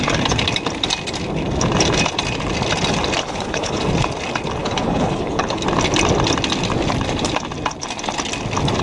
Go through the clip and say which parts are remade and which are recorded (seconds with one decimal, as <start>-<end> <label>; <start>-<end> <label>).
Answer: 0.0-3.2 recorded; 3.2-3.8 remade; 3.8-4.6 recorded; 4.6-5.6 remade; 5.6-8.8 recorded